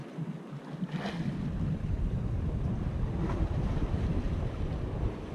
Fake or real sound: real